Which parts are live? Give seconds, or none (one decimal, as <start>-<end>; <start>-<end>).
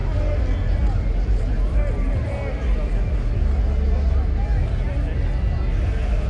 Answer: 0.0-6.3